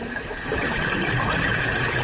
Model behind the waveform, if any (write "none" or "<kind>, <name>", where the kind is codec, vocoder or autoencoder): vocoder, BigVGAN v2